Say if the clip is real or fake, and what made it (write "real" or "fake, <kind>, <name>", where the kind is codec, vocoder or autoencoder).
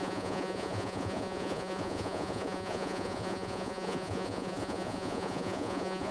fake, vocoder, Vocos